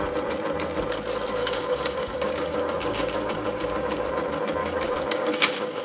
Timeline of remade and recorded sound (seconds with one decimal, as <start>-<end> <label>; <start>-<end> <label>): 0.0-1.4 recorded; 1.4-4.1 remade; 4.1-4.6 recorded; 4.6-5.8 remade